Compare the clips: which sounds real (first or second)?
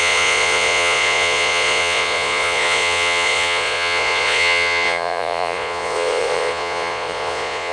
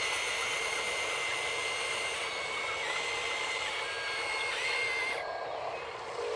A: second